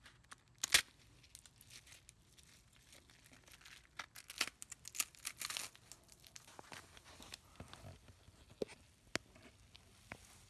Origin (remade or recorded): recorded